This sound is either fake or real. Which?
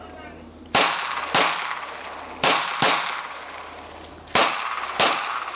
real